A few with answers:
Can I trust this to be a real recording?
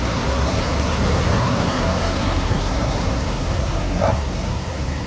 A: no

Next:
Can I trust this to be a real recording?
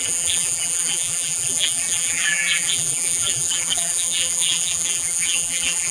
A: no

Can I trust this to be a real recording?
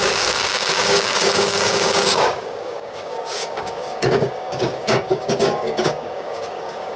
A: no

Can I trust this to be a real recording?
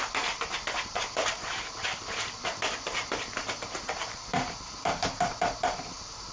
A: no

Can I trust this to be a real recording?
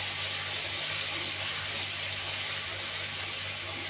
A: yes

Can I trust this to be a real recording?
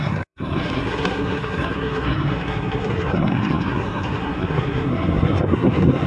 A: no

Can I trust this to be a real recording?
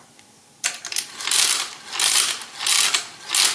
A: yes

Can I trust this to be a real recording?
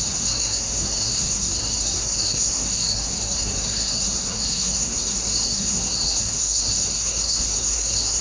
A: no